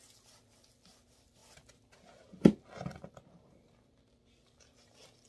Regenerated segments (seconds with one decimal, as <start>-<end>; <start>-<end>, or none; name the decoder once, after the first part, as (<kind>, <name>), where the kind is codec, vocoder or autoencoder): none